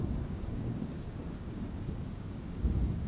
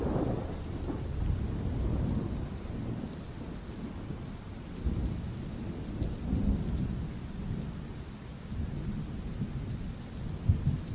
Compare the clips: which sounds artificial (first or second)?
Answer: first